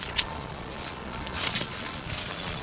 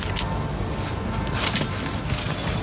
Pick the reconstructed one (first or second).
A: first